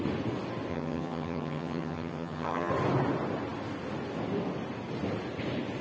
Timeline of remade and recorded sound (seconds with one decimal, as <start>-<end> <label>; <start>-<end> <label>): 0.0-0.7 recorded; 0.7-2.7 remade; 2.7-5.8 recorded